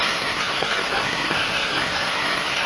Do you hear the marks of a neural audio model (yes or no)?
yes